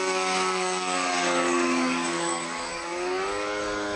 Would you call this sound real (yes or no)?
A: no